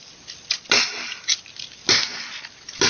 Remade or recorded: recorded